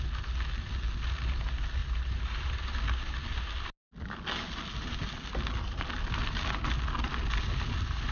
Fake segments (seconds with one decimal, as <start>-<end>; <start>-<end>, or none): 1.8-2.5